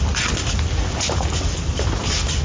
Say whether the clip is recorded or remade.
recorded